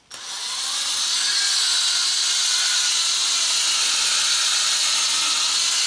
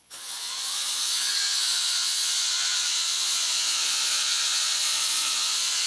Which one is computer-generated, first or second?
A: second